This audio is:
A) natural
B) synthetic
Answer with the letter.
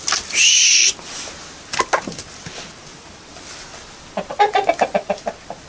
A